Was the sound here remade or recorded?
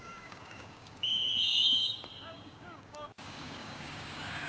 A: remade